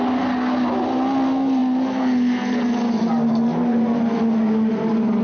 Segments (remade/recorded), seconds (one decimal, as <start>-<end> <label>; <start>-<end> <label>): 0.0-5.2 recorded

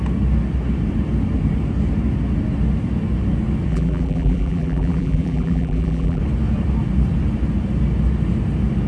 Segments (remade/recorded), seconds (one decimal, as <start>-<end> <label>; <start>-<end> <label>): 0.0-3.7 recorded; 3.7-6.2 remade; 6.2-8.9 recorded

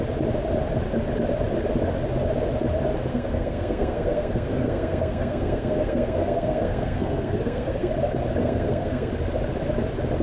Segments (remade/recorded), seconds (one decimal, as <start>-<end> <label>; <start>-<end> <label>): 0.0-3.1 recorded; 3.1-7.9 remade; 7.9-8.4 recorded; 8.4-9.1 remade; 9.1-10.2 recorded